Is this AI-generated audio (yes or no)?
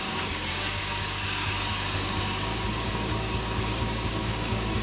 yes